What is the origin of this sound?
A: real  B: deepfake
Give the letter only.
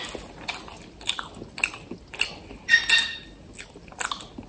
A